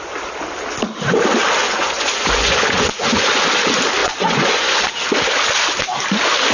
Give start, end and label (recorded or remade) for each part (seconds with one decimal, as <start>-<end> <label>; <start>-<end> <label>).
0.0-1.6 recorded; 1.6-3.4 remade; 3.4-4.0 recorded; 4.0-4.8 remade; 4.8-6.5 recorded